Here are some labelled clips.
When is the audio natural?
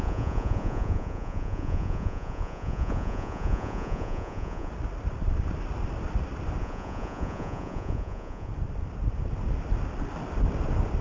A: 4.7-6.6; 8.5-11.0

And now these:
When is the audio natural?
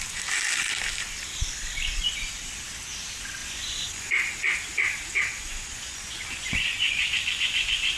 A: 0.0-3.4; 4.1-5.3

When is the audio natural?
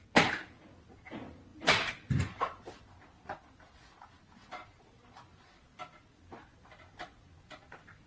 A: 0.0-8.1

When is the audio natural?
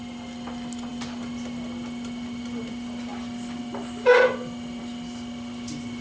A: 0.0-6.0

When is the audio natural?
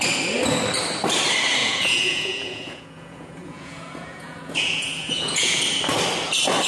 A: 0.0-1.6; 5.6-6.7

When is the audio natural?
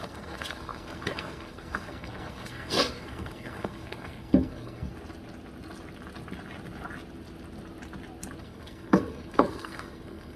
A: 4.9-8.4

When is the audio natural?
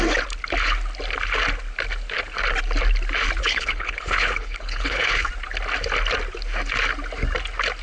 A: 0.0-3.4; 5.3-7.8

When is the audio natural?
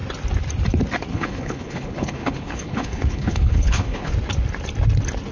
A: 0.0-1.1; 4.1-5.3